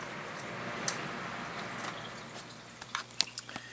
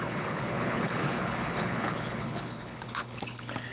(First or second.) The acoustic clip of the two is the first